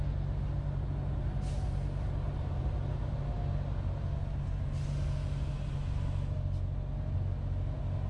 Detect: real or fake real